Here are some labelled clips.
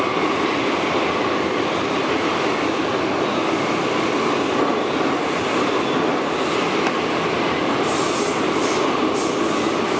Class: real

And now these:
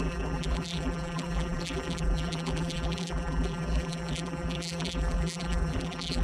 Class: fake